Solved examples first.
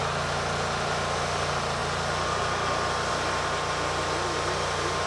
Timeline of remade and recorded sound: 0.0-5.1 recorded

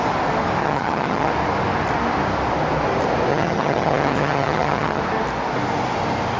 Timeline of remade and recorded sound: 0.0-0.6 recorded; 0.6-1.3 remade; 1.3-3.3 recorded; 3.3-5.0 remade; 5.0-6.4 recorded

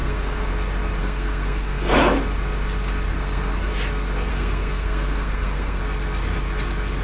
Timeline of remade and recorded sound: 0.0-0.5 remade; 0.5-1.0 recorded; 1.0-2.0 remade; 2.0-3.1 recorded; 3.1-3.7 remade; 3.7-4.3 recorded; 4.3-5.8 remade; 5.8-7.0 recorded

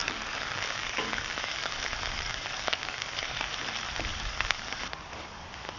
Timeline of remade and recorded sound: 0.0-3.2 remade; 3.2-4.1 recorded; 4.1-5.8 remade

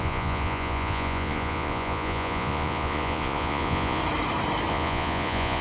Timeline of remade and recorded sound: 0.0-4.0 remade; 4.0-4.7 recorded; 4.7-5.6 remade

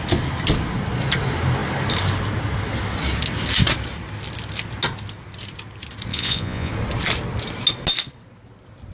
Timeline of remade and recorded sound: 0.0-6.1 recorded; 6.1-6.7 remade; 6.7-8.9 recorded

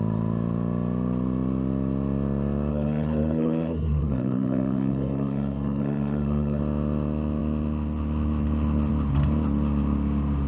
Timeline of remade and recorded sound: 0.0-2.7 recorded; 2.7-6.6 remade; 6.6-10.5 recorded